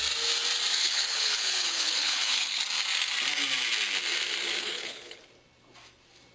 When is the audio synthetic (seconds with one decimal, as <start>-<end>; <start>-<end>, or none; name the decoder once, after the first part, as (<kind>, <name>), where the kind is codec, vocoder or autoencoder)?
0.8-2.6 (codec, HILCodec); 4.6-5.2